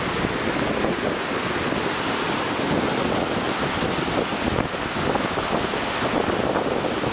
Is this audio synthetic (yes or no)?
no